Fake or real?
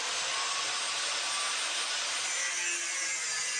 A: real